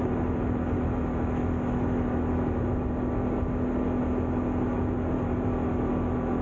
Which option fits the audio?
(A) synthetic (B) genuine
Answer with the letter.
B